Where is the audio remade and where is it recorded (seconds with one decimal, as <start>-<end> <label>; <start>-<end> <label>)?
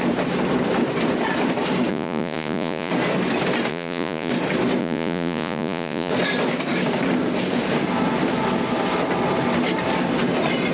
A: 0.0-1.9 recorded; 1.9-2.9 remade; 2.9-3.7 recorded; 3.7-4.3 remade; 4.3-4.8 recorded; 4.8-6.1 remade; 6.1-10.7 recorded